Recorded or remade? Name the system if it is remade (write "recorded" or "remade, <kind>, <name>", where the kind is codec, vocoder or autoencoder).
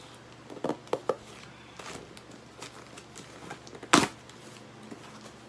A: recorded